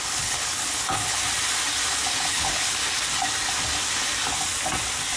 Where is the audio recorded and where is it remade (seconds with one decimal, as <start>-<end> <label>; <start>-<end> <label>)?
0.0-1.2 remade; 1.2-2.3 recorded; 2.3-2.8 remade; 2.8-5.2 recorded